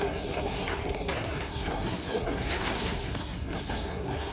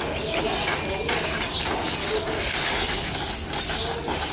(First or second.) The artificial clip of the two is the first